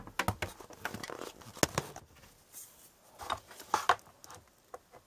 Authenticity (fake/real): real